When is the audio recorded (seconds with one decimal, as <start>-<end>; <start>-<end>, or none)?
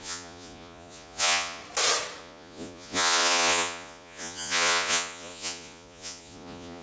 1.6-2.2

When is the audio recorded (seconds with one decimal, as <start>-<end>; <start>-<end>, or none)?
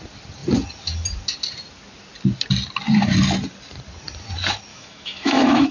0.0-4.7